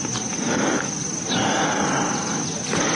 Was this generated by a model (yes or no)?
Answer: no